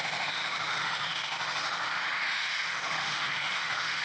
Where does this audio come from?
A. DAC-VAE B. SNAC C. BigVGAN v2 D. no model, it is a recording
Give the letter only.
A